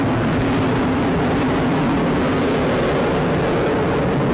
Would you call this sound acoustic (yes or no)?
yes